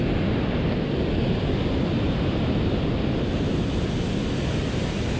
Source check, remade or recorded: recorded